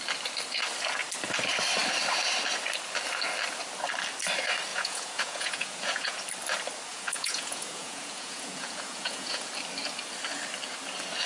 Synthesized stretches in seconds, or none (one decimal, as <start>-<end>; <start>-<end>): 4.7-6.2; 6.9-9.5